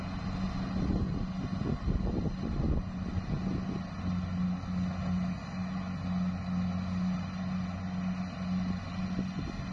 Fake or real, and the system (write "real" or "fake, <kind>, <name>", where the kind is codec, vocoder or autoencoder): real